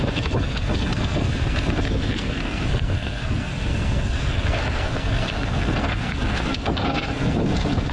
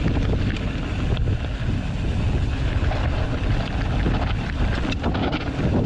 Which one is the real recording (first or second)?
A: second